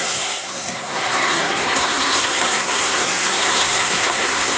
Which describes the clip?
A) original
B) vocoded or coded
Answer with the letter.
B